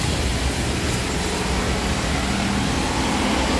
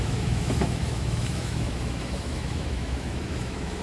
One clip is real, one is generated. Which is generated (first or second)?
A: second